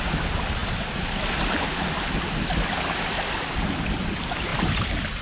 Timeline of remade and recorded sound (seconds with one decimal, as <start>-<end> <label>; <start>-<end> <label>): 0.0-5.2 recorded